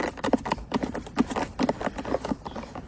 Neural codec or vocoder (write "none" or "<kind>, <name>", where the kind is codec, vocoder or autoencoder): none